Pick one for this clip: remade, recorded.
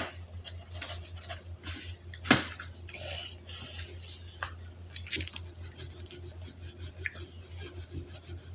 recorded